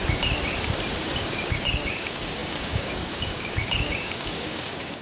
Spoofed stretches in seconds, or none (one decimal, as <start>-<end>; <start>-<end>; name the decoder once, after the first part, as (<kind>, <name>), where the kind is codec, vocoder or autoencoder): 1.0-5.0 (codec, DAC)